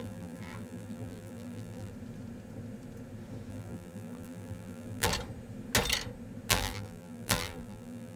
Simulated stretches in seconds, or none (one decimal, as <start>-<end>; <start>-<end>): 0.0-1.9; 3.5-5.1; 6.5-8.2

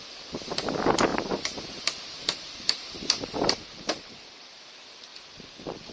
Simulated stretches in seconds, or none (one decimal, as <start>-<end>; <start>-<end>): 1.1-4.6

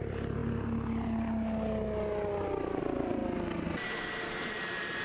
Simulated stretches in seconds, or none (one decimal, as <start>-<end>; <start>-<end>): 0.0-0.4; 2.8-3.2; 4.3-5.0

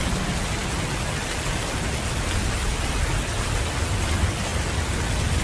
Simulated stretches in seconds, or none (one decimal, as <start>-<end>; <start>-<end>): none

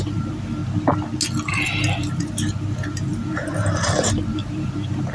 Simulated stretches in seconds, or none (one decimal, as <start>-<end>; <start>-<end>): 0.0-0.6; 1.5-5.1

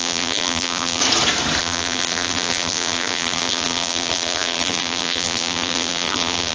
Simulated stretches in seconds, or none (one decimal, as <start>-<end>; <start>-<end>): 0.0-1.0; 1.6-6.5

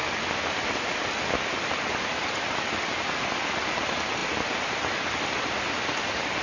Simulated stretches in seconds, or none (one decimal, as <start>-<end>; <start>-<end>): 0.0-3.8; 4.2-5.2

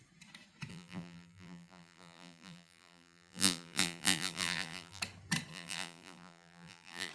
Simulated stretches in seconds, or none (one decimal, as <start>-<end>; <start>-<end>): 0.7-5.0; 5.5-7.1